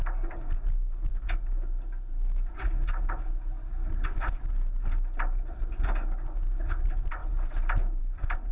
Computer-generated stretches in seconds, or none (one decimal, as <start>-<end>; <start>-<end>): none